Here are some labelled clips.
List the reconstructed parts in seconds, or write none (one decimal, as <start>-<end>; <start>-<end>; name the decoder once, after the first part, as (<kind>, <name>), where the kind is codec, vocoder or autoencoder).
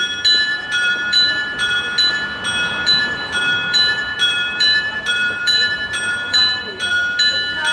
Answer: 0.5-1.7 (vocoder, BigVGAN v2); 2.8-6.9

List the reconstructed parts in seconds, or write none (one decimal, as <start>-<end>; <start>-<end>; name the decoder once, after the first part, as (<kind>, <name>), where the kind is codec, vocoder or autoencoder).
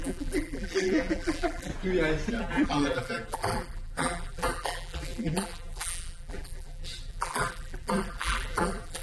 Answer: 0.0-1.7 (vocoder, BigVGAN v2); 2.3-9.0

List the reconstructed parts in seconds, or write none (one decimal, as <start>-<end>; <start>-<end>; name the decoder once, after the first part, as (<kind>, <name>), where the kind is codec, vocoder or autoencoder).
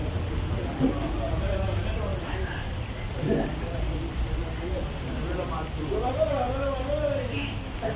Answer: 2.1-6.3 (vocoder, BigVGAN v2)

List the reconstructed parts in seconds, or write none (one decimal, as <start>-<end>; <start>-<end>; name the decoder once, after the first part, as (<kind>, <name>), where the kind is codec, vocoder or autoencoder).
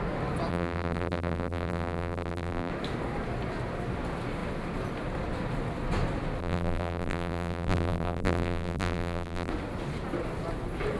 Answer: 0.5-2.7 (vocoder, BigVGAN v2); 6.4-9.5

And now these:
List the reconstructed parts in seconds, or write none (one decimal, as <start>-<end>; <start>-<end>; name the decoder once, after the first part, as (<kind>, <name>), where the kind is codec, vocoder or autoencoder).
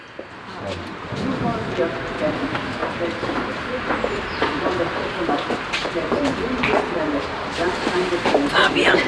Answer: 2.8-4.4 (vocoder, BigVGAN v2); 5.8-8.1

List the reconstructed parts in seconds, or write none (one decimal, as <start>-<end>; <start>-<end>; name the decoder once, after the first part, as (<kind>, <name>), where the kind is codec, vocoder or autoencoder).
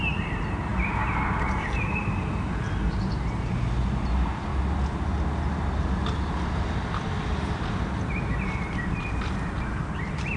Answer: 0.0-4.5 (vocoder, BigVGAN v2); 7.7-10.4